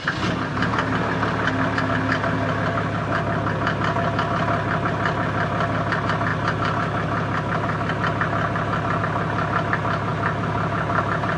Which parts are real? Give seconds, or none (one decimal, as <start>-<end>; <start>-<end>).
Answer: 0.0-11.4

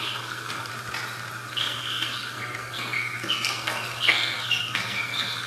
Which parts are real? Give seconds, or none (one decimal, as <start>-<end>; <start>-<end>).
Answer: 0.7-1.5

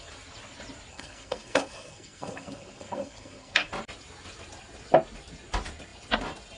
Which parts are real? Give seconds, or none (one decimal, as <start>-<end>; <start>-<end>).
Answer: 0.0-0.9; 3.7-6.6

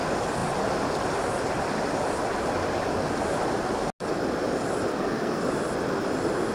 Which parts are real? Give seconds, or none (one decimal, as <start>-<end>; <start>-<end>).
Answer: 0.0-4.9; 5.4-6.5

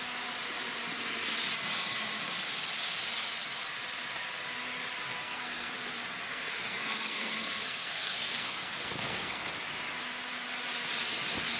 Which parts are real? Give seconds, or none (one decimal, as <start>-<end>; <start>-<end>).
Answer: 0.0-5.1; 5.7-6.3; 9.5-11.6

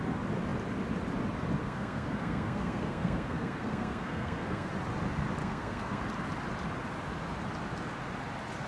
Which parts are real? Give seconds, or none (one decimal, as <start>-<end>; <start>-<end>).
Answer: 0.0-1.6; 4.7-5.4; 6.0-8.7